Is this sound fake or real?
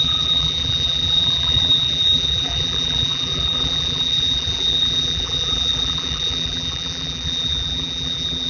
fake